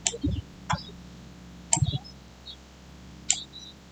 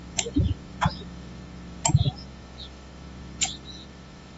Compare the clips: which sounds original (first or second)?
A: first